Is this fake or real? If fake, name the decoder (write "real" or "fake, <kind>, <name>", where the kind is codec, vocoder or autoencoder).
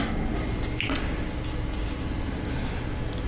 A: real